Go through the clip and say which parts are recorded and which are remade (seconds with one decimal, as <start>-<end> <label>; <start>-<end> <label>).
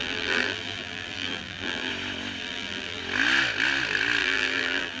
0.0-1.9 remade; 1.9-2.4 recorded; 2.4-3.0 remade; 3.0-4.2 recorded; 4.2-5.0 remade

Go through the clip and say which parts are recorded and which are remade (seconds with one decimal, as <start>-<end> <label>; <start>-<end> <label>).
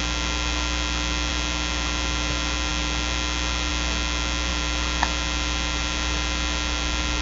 0.0-7.2 recorded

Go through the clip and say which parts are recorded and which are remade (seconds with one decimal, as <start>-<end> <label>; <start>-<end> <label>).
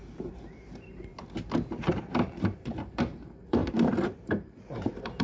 0.0-1.1 remade; 1.1-2.0 recorded; 2.0-5.2 remade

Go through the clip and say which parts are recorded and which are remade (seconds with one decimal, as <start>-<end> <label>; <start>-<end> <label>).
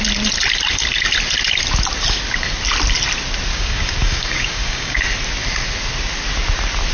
0.0-3.5 recorded; 3.5-5.0 remade; 5.0-6.9 recorded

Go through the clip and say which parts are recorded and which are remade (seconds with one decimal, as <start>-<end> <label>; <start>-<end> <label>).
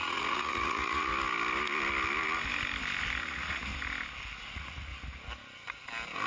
0.0-1.1 remade; 1.1-3.2 recorded; 3.2-3.7 remade; 3.7-4.4 recorded; 4.4-4.9 remade; 4.9-6.3 recorded